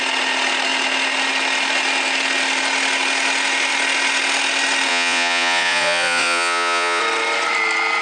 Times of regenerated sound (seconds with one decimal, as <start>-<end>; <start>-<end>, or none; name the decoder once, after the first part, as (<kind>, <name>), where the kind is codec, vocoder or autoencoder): 4.9-7.0 (vocoder, Vocos)